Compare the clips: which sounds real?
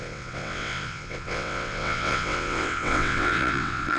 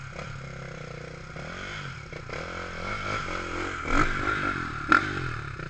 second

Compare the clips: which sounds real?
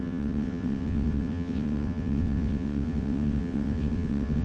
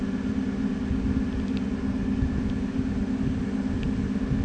second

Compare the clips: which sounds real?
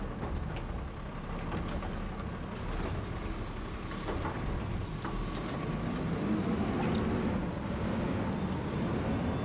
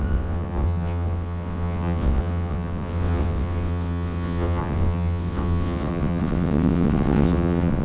first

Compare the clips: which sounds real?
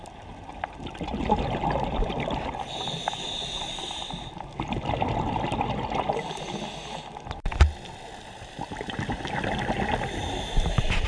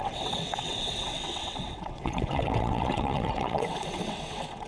first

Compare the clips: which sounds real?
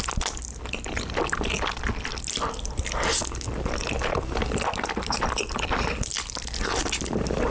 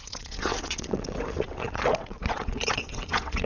first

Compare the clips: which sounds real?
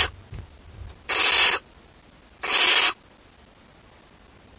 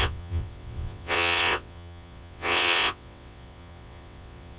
first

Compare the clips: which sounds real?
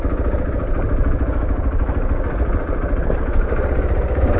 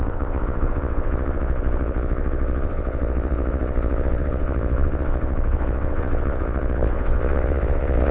first